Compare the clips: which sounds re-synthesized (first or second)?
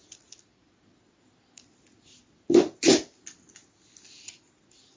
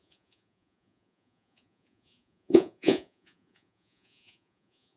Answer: second